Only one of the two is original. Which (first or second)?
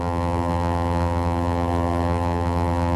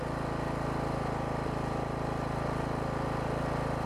second